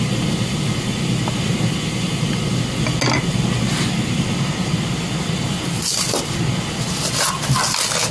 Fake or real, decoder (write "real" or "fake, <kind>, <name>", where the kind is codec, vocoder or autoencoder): real